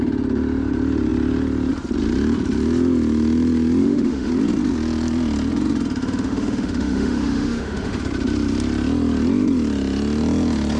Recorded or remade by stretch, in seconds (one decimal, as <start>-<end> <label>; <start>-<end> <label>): 0.0-3.8 recorded; 3.8-4.3 remade; 4.3-6.0 recorded; 6.0-8.0 remade; 8.0-10.8 recorded